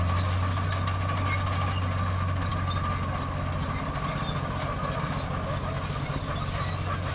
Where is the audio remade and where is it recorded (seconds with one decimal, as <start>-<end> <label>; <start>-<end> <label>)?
0.0-7.1 recorded